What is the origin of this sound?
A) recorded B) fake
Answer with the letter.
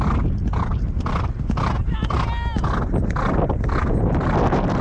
A